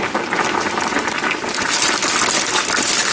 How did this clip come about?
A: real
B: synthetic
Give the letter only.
A